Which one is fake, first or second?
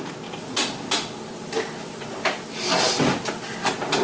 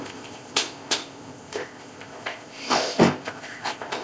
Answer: second